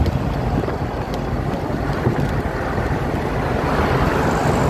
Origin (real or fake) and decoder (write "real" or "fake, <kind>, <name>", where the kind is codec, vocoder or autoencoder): real